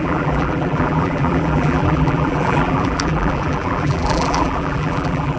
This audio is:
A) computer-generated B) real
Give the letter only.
A